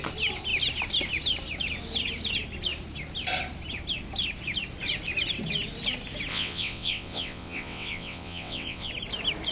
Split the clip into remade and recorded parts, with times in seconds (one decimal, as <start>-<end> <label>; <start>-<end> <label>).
0.0-6.3 recorded; 6.3-8.9 remade; 8.9-9.5 recorded